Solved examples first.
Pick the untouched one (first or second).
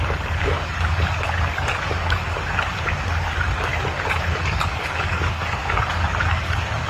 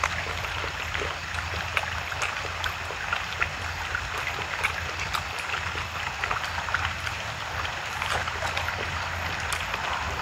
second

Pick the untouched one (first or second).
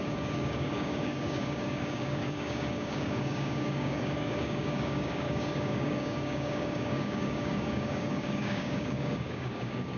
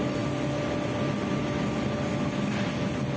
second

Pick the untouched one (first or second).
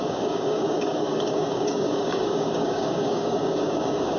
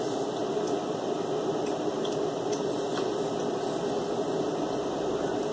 second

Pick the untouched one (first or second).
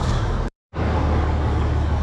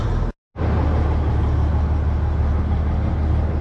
second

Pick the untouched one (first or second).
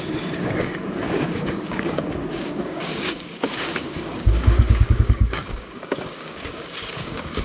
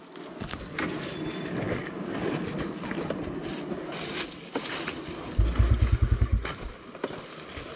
second